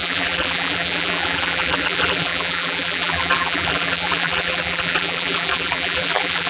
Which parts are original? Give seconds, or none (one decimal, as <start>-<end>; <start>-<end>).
none